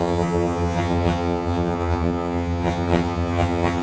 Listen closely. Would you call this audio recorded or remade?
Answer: remade